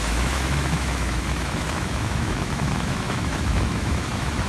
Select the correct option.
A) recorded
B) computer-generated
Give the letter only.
B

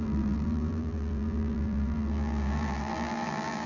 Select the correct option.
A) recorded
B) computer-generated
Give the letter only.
B